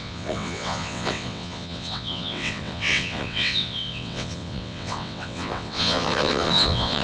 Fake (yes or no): yes